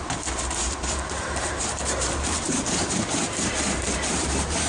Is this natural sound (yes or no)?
no